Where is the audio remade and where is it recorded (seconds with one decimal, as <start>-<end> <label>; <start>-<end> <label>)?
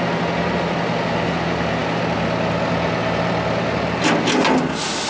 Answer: 0.0-5.1 recorded